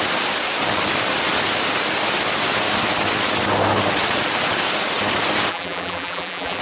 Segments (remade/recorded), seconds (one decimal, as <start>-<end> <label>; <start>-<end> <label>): 0.0-5.5 recorded; 5.5-6.6 remade